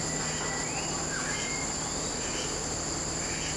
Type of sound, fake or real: real